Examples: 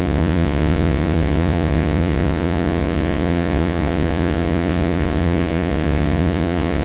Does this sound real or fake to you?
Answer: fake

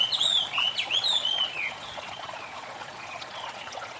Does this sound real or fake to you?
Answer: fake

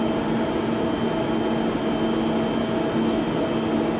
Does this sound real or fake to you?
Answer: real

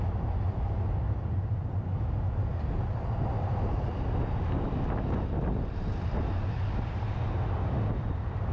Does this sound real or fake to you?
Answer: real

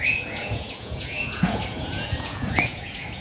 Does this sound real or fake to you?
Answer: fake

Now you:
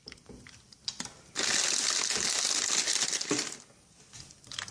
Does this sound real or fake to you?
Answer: real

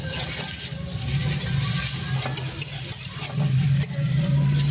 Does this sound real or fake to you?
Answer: real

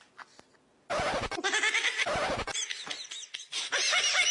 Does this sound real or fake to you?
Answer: real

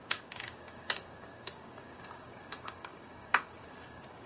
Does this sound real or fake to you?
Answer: fake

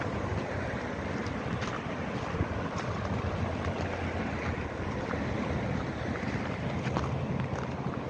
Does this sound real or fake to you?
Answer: real